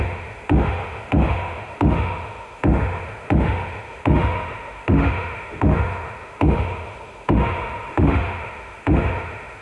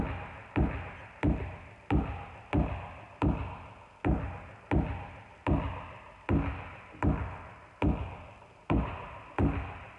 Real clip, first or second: second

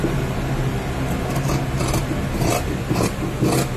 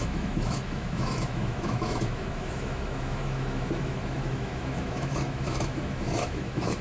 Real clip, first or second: first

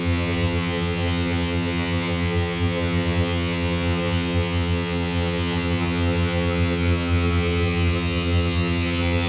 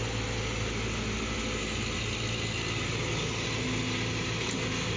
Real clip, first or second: second